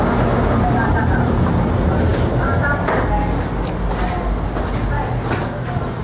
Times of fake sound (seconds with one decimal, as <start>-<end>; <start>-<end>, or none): none